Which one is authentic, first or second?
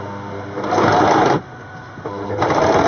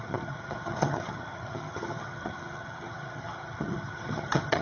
first